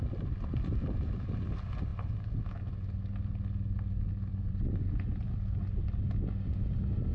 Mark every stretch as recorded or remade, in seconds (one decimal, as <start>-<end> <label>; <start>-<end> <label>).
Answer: 0.0-4.3 recorded; 4.3-5.2 remade; 5.2-7.1 recorded